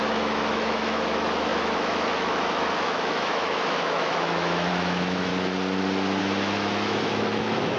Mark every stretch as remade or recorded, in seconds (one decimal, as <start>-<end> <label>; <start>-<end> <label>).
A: 0.0-5.3 remade; 5.3-6.2 recorded; 6.2-7.8 remade